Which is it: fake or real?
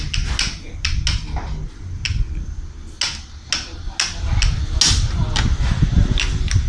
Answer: real